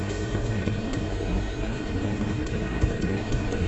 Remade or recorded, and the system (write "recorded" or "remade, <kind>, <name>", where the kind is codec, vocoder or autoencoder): remade, codec, SNAC